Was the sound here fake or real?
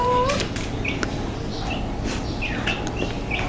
real